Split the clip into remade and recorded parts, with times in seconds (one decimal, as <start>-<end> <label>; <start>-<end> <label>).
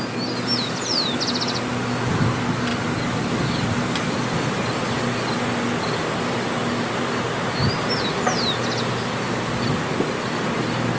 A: 0.0-11.0 recorded